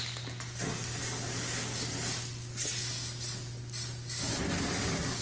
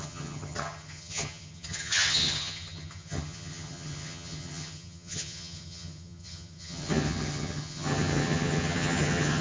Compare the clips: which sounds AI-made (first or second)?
second